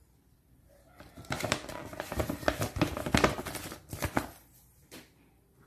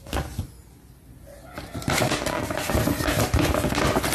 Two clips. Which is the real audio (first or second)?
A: second